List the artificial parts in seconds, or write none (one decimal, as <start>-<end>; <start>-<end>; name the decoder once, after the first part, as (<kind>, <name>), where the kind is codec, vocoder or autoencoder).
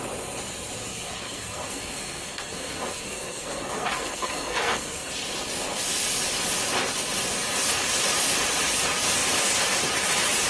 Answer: 0.9-5.1 (codec, SNAC)